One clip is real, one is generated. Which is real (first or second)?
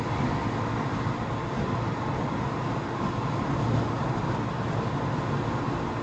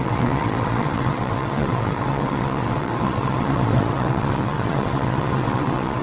first